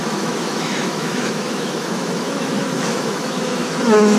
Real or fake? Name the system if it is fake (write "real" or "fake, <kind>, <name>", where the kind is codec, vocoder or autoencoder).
fake, autoencoder, DAC-VAE